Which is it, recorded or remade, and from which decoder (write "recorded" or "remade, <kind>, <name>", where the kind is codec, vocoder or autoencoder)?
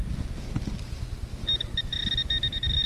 recorded